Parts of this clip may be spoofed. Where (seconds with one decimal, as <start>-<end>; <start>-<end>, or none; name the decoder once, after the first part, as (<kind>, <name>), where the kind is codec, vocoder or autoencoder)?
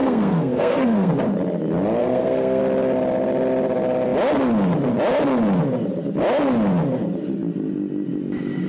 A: 0.0-1.1 (codec, SNAC); 2.0-2.6